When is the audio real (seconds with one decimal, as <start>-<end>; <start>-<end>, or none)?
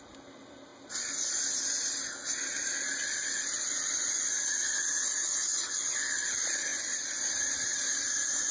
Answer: 0.0-8.5